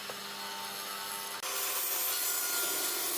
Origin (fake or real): real